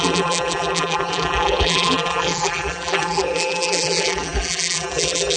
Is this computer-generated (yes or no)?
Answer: yes